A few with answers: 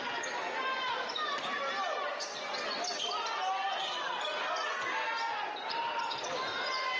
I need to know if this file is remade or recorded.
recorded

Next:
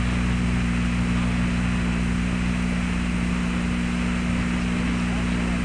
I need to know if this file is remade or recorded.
recorded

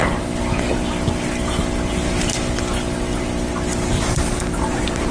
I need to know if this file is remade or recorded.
recorded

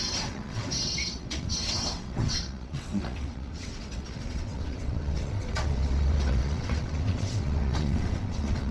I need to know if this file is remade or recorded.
remade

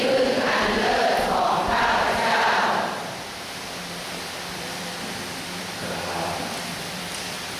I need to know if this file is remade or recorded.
remade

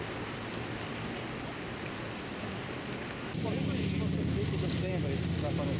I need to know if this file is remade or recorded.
recorded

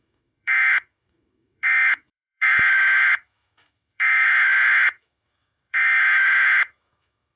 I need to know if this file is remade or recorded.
remade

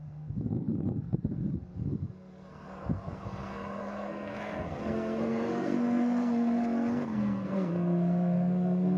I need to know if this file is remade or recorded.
remade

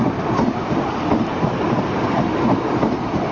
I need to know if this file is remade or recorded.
recorded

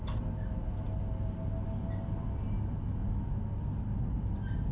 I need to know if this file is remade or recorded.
recorded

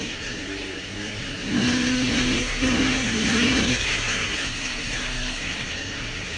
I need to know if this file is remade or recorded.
remade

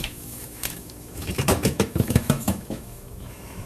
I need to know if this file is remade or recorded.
remade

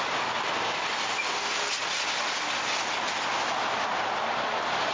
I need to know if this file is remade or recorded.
recorded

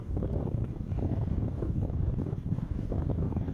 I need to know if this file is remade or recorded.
remade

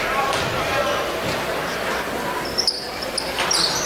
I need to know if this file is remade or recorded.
recorded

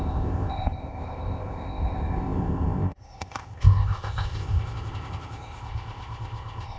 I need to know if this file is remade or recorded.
remade